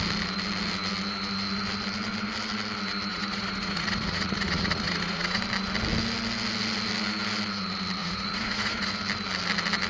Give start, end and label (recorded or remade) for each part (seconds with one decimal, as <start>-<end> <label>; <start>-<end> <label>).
0.0-3.1 recorded; 3.1-5.4 remade; 5.4-8.0 recorded; 8.0-8.9 remade; 8.9-9.9 recorded